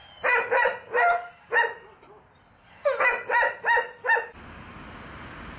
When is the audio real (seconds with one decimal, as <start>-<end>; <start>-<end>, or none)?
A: 0.0-5.6